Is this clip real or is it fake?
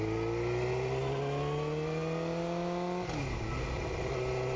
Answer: real